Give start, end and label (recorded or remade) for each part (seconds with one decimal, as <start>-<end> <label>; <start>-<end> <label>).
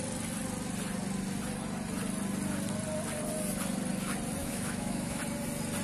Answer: 0.0-4.4 recorded; 4.4-5.2 remade; 5.2-5.8 recorded